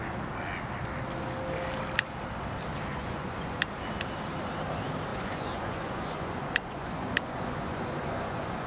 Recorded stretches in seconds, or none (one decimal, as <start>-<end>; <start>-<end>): 0.0-2.9; 3.6-5.1